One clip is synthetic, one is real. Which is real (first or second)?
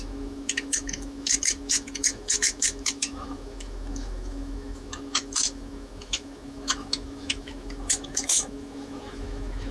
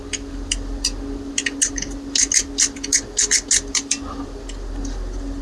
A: second